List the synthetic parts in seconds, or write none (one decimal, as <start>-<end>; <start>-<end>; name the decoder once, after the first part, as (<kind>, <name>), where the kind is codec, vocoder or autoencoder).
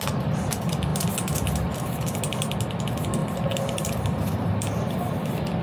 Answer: 3.2-5.1 (vocoder, BigVGAN v2)